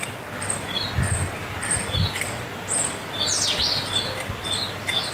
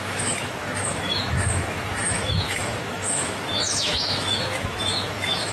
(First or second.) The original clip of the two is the first